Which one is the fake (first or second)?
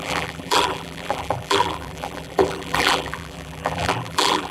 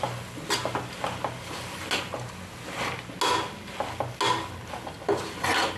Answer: first